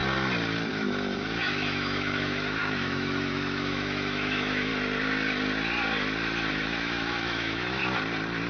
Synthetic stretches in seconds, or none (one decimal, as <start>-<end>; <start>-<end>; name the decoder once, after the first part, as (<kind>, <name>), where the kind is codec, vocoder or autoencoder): 0.7-4.7 (autoencoder, DAC-VAE); 6.5-7.8